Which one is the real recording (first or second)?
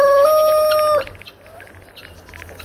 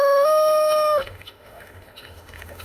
first